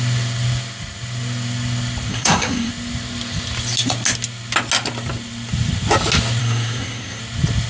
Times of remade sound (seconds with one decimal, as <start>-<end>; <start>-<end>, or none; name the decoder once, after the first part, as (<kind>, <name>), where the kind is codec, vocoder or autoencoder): 2.1-2.7 (codec, SNAC); 6.4-7.2